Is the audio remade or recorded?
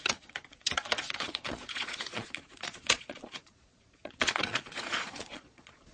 remade